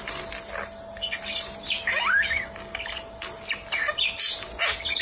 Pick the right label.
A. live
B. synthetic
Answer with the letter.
A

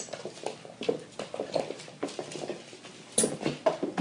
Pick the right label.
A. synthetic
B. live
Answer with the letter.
B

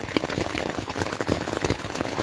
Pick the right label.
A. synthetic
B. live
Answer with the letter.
A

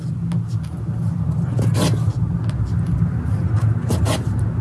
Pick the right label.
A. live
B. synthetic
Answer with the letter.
A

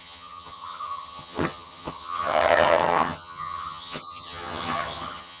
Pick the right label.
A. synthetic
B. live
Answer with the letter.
A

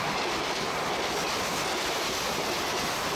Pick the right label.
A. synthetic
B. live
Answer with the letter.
B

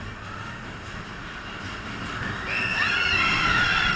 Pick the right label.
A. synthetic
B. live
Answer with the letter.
B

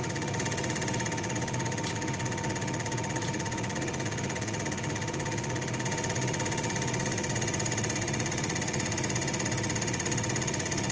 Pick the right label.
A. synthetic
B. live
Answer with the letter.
A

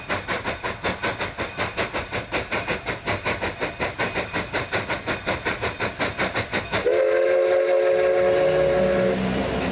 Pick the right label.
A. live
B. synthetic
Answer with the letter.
A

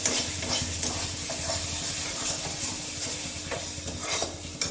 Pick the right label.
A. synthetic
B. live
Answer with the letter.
A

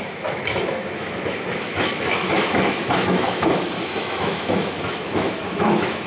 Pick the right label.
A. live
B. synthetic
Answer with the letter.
B